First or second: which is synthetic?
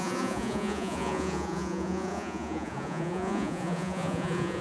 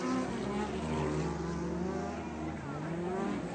first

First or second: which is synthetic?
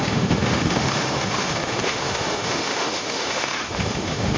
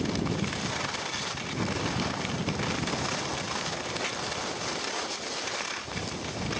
first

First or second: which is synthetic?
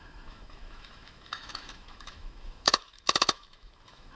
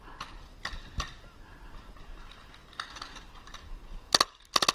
first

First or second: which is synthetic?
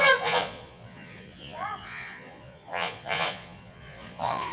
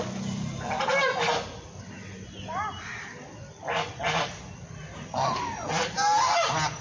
first